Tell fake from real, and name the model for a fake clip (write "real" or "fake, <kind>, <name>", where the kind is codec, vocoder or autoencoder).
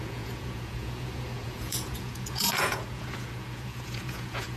fake, vocoder, Vocos